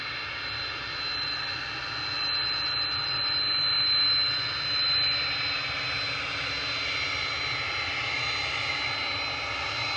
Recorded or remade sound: recorded